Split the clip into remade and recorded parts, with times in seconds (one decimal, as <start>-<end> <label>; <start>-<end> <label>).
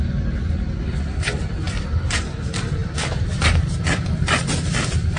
0.0-5.2 remade